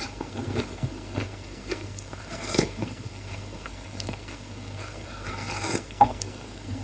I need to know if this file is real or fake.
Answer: fake